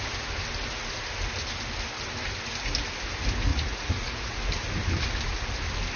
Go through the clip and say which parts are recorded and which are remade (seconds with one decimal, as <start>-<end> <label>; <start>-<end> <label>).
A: 0.0-3.5 recorded; 3.5-4.4 remade; 4.4-6.0 recorded